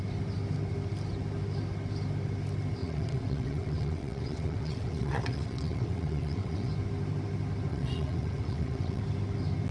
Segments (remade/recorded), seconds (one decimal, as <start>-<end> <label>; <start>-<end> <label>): 0.0-2.8 recorded; 2.8-6.7 remade; 6.7-7.7 recorded; 7.7-9.0 remade; 9.0-9.7 recorded